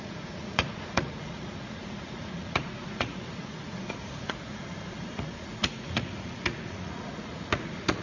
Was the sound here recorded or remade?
remade